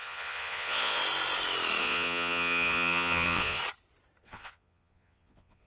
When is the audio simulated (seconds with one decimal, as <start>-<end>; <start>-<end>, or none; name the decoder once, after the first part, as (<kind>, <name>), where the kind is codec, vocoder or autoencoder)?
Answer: 0.0-1.0 (vocoder, Vocos); 1.8-3.6; 4.2-5.7

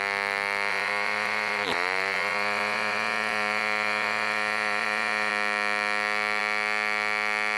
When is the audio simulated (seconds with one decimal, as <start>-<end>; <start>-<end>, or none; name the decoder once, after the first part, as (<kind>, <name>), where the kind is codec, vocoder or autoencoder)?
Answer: 0.7-5.3 (vocoder, Vocos)

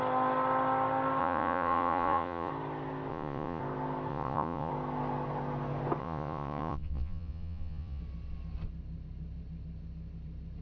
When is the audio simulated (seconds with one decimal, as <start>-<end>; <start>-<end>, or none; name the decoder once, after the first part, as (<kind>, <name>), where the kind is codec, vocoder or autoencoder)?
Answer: 1.2-2.5 (vocoder, Vocos); 3.1-3.6; 4.1-4.7; 6.0-8.0